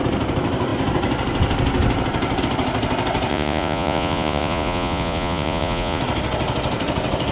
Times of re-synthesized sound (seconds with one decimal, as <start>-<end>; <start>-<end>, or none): 3.3-6.0

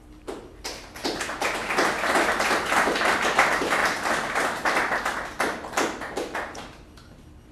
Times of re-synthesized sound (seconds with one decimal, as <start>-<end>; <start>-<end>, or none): 3.8-5.0

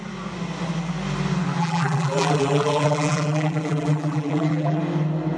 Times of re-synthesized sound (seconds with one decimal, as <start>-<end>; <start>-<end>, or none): 1.6-4.8

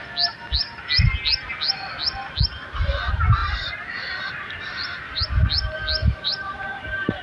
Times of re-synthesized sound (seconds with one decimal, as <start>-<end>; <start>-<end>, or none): 3.4-5.3; 6.0-7.2

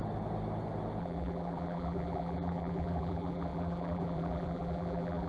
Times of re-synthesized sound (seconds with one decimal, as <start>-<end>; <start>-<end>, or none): 1.0-5.3

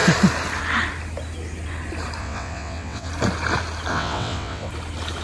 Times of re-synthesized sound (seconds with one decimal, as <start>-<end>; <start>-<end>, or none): 2.2-3.1; 3.9-4.7